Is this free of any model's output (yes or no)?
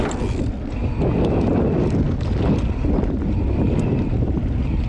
yes